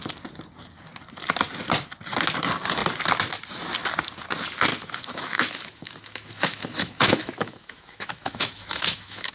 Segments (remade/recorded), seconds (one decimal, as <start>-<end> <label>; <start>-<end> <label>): 0.0-4.7 recorded; 4.7-9.3 remade